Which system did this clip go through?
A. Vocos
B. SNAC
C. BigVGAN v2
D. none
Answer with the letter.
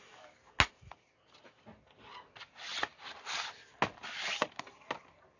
D